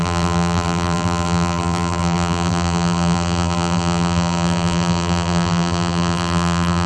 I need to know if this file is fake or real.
fake